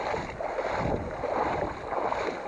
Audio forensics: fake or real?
real